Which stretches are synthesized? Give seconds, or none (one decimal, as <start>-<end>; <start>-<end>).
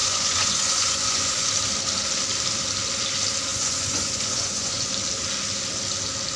0.0-1.5; 3.5-4.9